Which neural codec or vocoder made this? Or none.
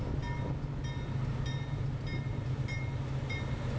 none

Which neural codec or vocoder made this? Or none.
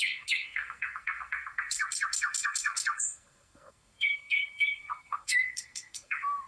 codec, SNAC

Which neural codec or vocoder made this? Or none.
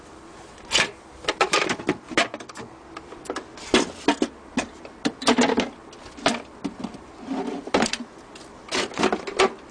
none